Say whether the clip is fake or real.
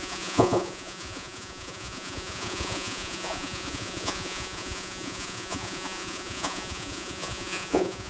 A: fake